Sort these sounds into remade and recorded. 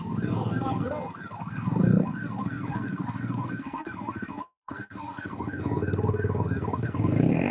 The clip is remade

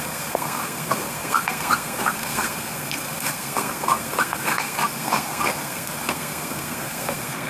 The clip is remade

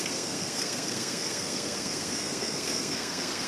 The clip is remade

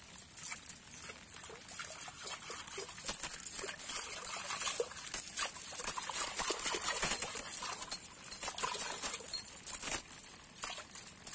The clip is recorded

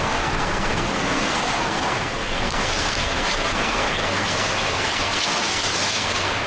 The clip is remade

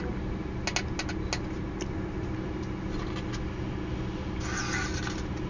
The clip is recorded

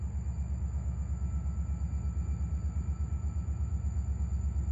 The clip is recorded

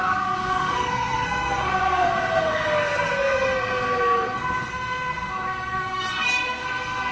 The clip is remade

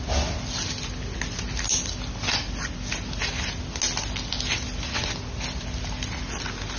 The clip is recorded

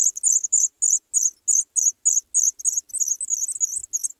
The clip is recorded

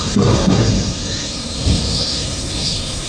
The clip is remade